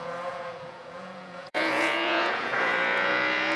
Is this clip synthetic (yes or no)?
yes